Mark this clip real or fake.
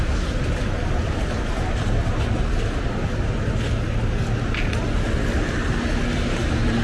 real